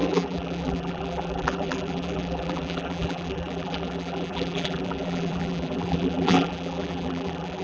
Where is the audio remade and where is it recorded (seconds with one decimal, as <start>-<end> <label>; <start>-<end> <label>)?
0.0-7.6 remade